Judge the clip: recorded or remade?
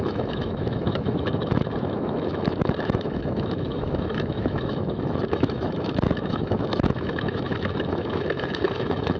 remade